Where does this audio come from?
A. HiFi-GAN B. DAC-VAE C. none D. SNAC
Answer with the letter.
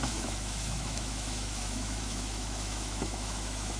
B